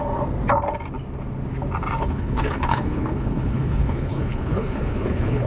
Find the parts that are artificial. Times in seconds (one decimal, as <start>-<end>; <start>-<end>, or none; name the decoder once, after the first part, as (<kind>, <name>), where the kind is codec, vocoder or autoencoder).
2.0-5.5 (codec, HILCodec)